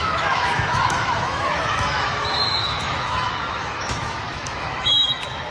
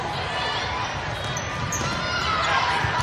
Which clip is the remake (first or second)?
first